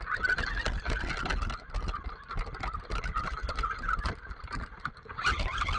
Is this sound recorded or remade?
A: recorded